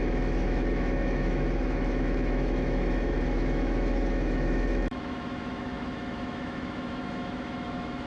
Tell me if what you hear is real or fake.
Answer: fake